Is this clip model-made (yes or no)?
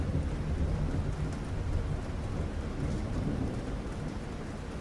no